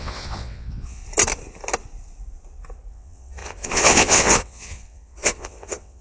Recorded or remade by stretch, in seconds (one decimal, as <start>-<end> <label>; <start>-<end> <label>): 0.0-1.0 remade; 1.0-2.9 recorded; 2.9-6.0 remade